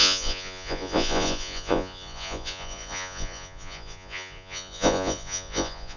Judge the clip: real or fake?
fake